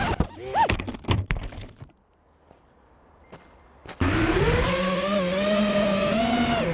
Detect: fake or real real